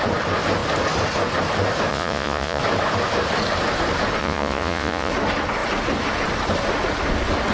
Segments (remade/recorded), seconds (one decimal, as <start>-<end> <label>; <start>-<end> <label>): 0.0-1.9 recorded; 1.9-2.6 remade; 2.6-4.2 recorded; 4.2-5.1 remade; 5.1-7.5 recorded